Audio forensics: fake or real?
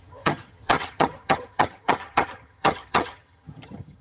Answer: fake